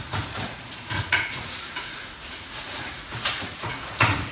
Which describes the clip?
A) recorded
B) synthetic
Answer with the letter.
B